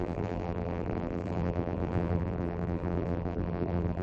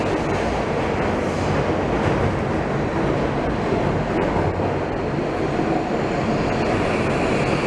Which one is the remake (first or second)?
first